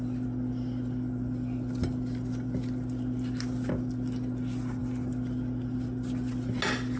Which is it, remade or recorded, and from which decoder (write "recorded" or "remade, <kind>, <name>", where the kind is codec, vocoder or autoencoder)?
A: recorded